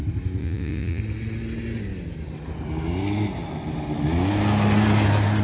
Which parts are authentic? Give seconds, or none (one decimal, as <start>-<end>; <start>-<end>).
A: 0.0-0.4; 1.0-5.4